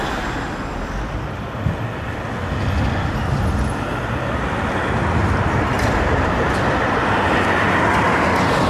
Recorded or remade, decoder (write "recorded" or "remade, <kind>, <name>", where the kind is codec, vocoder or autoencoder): recorded